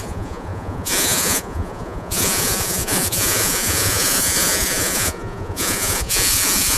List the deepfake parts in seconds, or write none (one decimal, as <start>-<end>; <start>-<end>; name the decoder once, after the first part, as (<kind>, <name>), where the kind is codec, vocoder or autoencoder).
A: 0.0-6.8 (vocoder, Vocos)